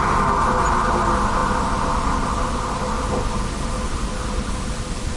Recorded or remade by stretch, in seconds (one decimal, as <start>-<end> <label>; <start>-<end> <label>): 0.0-5.2 recorded